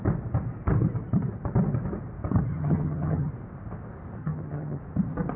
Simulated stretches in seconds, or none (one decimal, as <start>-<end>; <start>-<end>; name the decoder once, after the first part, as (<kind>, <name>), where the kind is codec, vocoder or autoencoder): 2.5-3.3 (vocoder, HiFi-GAN); 4.2-4.8